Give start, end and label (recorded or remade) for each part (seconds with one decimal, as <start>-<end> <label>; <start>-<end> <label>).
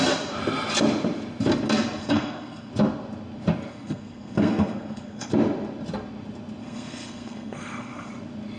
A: 0.0-2.0 recorded; 2.0-2.7 remade; 2.7-3.7 recorded; 3.7-5.3 remade; 5.3-6.6 recorded; 6.6-8.1 remade; 8.1-8.6 recorded